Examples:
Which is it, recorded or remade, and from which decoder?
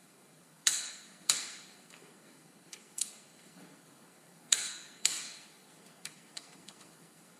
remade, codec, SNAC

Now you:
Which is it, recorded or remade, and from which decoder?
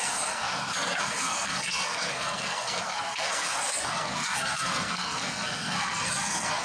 remade, codec, SNAC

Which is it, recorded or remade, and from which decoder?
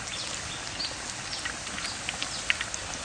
recorded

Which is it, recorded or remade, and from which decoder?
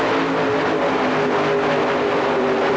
recorded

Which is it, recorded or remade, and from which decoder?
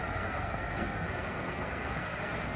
remade, codec, SNAC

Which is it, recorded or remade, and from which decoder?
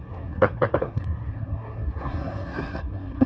remade, codec, SNAC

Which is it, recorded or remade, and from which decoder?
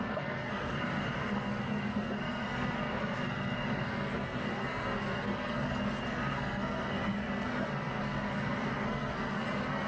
remade, codec, SNAC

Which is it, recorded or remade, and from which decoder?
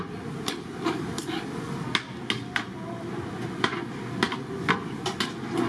recorded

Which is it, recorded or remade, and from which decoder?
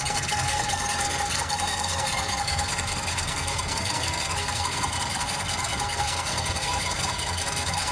remade, codec, SNAC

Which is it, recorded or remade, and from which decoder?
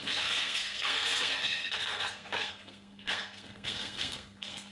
remade, codec, SNAC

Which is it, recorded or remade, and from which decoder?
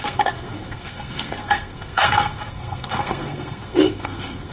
remade, codec, SNAC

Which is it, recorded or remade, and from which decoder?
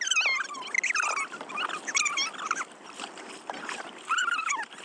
recorded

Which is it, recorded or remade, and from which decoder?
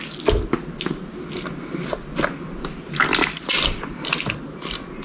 recorded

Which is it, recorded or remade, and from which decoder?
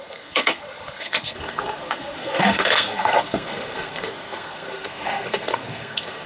remade, codec, SNAC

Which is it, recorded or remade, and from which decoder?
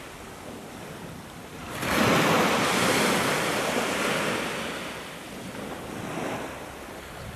recorded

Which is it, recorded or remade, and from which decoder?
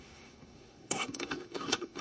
remade, codec, SNAC